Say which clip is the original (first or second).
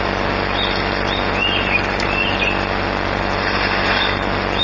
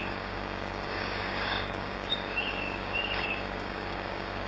first